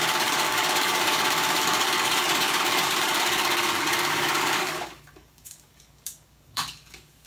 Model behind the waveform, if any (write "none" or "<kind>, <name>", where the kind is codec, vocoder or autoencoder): codec, DAC